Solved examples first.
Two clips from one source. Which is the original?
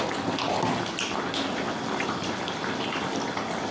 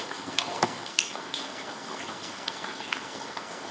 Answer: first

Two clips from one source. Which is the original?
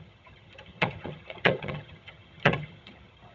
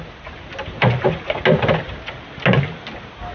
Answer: second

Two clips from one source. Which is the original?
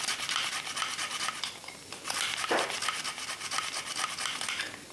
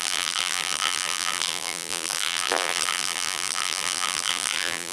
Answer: first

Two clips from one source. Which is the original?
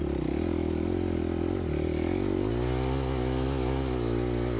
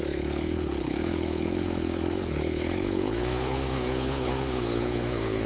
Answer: first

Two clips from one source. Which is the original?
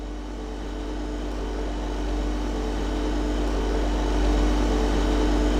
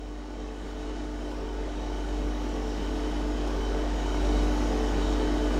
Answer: first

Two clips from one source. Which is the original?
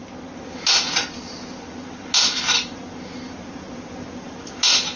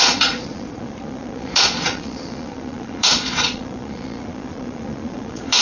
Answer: first